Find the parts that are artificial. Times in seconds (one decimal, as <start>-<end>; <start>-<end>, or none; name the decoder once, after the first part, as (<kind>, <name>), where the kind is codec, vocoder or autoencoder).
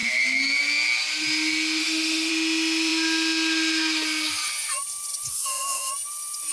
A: 1.8-2.3 (autoencoder, DAC-VAE); 5.3-5.9